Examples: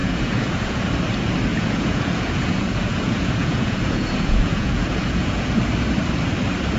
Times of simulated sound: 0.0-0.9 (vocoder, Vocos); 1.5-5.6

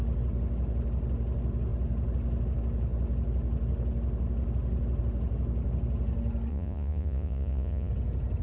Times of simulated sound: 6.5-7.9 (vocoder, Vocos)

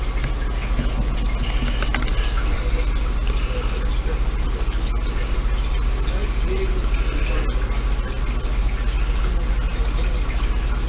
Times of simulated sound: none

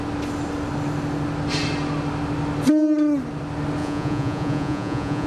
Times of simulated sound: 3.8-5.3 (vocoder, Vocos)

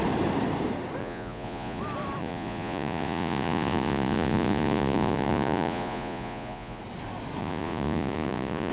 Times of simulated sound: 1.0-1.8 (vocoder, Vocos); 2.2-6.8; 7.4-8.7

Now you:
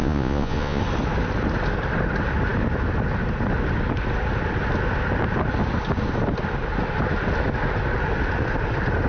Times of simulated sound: 0.0-0.8 (vocoder, Vocos)